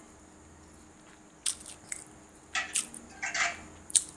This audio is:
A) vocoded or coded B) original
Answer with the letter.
B